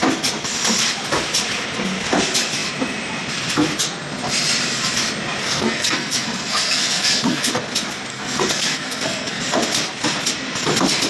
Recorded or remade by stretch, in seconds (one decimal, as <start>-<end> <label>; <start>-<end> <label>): 0.0-5.4 recorded; 5.4-7.6 remade; 7.6-8.1 recorded; 8.1-9.4 remade; 9.4-11.1 recorded